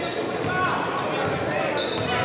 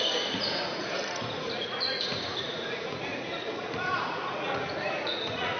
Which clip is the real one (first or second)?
first